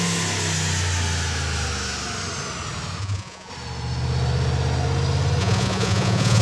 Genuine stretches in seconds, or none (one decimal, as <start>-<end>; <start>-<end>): 0.0-3.0; 3.5-5.4